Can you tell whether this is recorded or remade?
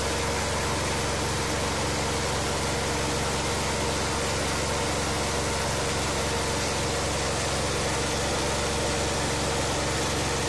recorded